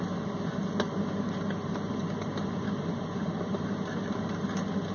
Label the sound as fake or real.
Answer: real